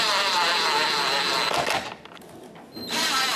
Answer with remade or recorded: recorded